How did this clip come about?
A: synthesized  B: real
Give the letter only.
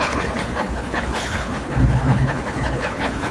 A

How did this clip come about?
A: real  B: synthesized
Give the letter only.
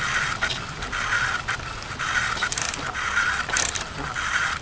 A